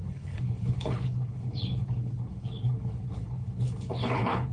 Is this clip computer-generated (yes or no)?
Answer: yes